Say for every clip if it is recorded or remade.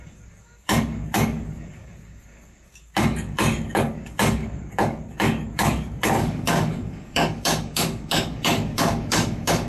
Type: remade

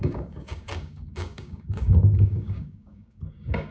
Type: remade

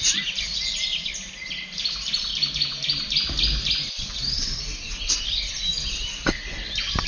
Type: recorded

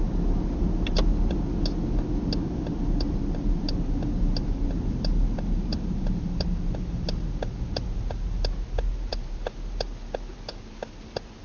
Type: recorded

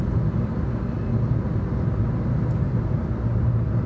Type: recorded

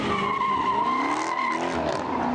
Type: recorded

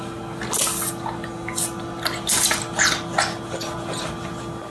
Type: recorded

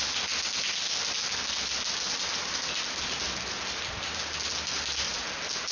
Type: recorded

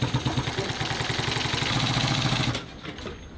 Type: recorded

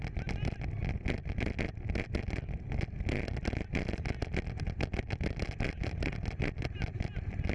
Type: recorded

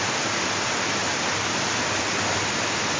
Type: recorded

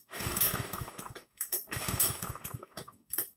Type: remade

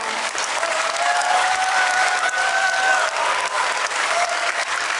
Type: remade